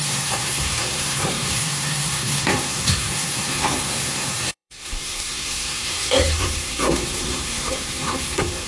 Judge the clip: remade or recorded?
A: remade